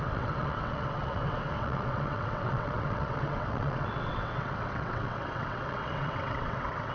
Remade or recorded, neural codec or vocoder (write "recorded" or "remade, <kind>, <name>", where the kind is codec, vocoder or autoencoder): remade, vocoder, WaveNeXt